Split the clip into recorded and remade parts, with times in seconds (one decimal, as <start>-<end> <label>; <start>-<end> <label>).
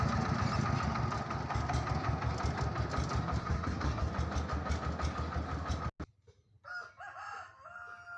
0.0-3.4 recorded; 3.4-4.1 remade; 4.1-8.2 recorded